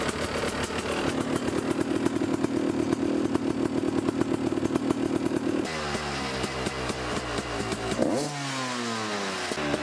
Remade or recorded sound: recorded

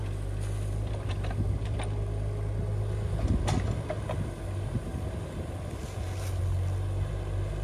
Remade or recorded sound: recorded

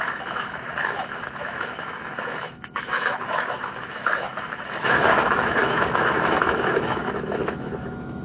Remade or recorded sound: remade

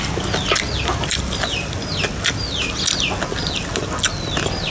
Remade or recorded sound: recorded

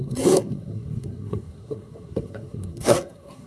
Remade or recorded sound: remade